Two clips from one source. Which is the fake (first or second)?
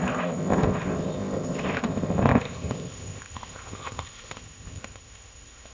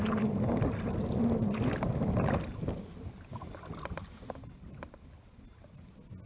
first